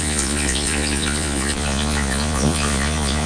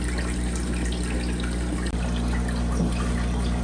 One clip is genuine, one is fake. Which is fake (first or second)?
first